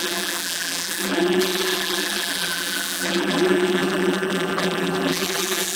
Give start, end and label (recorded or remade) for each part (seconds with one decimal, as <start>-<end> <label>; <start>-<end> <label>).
0.0-5.8 remade